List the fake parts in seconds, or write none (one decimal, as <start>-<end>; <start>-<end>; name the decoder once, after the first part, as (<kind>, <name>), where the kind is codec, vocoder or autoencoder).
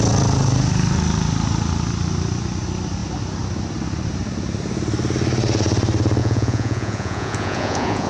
6.2-8.1 (vocoder, Vocos)